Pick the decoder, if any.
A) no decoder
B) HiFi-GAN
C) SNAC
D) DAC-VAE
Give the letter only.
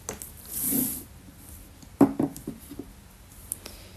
A